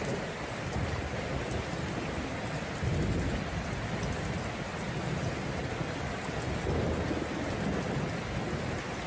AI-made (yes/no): no